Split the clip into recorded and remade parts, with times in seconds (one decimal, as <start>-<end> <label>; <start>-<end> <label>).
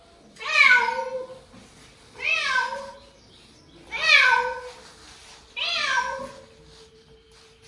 0.0-5.2 recorded; 5.2-6.2 remade; 6.2-7.7 recorded